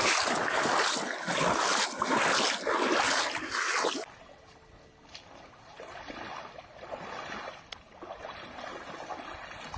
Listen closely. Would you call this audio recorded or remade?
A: recorded